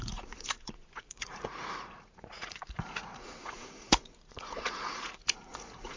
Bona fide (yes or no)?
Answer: no